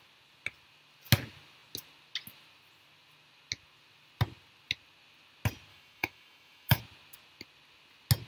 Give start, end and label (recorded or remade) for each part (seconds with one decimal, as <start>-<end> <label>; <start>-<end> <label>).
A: 0.0-5.7 recorded; 5.7-6.8 remade; 6.8-8.3 recorded